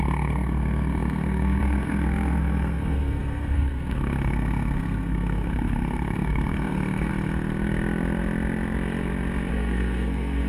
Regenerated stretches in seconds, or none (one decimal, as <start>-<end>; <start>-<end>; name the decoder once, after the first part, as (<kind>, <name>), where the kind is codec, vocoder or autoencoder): 0.0-7.1 (codec, SNAC); 9.5-10.5